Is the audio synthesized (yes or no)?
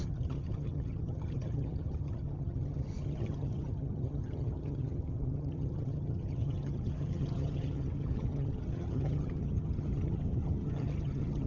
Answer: yes